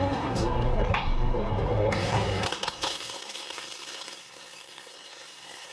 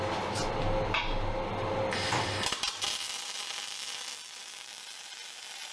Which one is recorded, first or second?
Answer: second